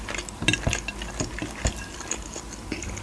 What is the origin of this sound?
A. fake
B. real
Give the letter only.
B